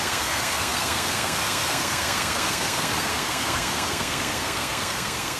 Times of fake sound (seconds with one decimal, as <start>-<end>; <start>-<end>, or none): 0.0-5.4